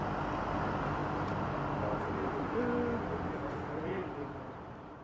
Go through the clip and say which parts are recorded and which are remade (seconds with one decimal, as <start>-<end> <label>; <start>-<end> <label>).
0.0-5.0 recorded